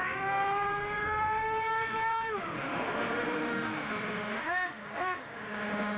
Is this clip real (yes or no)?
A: no